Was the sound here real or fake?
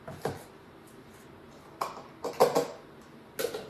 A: real